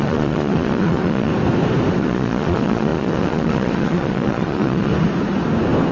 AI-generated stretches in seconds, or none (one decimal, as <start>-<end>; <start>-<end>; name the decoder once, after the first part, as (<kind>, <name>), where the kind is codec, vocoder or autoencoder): 0.0-1.3 (vocoder, Vocos); 2.0-4.9